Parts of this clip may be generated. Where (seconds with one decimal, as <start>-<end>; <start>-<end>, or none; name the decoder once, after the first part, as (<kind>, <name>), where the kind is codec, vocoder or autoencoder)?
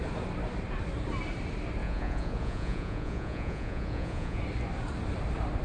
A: 1.8-4.4 (vocoder, Vocos)